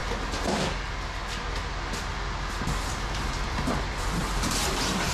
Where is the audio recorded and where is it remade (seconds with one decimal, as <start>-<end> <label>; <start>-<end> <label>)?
0.0-3.1 recorded; 3.1-5.1 remade